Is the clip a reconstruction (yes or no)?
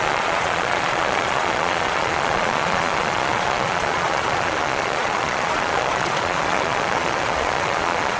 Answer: yes